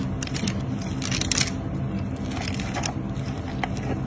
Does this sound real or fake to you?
real